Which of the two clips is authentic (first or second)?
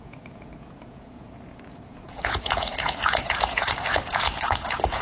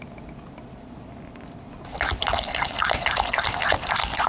second